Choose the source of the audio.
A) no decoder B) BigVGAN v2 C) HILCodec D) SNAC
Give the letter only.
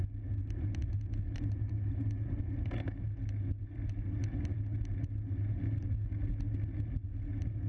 A